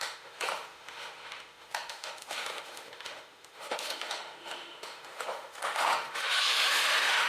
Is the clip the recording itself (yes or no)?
no